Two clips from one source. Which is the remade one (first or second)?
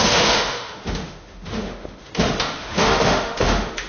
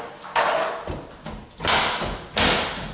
first